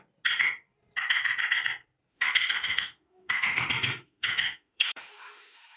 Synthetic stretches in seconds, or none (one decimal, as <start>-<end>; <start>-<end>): 2.1-5.8